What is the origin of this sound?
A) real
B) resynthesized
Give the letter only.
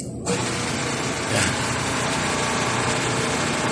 A